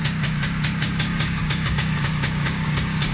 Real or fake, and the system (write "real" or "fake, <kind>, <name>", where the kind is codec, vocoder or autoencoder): fake, codec, DAC